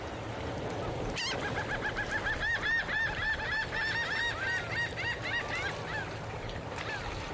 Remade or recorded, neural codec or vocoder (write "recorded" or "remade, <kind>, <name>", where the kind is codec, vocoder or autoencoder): recorded